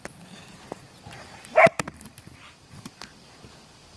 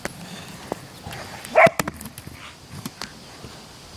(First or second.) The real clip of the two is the second